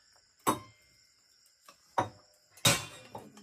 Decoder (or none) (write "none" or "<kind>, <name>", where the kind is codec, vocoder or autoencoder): none